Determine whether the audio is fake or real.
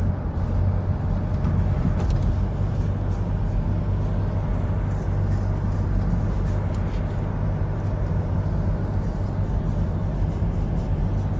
real